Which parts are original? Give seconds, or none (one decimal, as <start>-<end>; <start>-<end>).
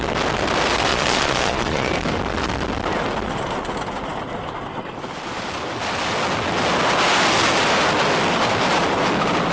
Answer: 0.0-0.9; 1.9-9.5